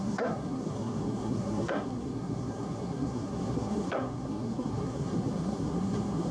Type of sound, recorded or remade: remade